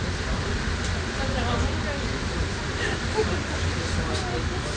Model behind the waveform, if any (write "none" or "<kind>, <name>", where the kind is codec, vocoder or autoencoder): none